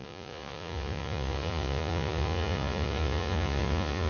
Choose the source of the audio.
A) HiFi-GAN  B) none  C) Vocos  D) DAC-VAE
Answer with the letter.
C